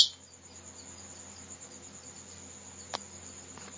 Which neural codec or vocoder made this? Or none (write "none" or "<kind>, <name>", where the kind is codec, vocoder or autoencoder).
none